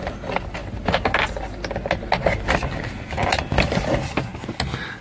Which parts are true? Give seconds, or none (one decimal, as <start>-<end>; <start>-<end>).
0.0-5.0